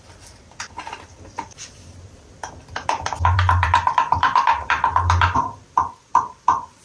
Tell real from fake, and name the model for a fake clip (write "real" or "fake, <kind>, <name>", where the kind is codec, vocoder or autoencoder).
fake, vocoder, BigVGAN v2